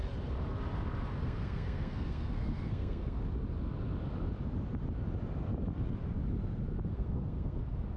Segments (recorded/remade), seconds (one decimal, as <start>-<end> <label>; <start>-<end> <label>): 0.0-1.2 recorded; 1.2-3.2 remade; 3.2-6.9 recorded; 6.9-7.6 remade; 7.6-8.0 recorded